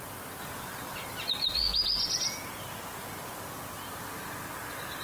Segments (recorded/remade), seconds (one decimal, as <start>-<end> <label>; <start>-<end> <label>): 0.0-5.0 recorded